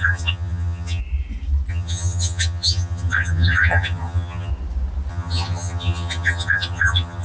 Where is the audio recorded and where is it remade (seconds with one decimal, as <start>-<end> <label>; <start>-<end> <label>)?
0.0-1.0 remade; 1.0-1.7 recorded; 1.7-4.5 remade; 4.5-5.1 recorded; 5.1-7.2 remade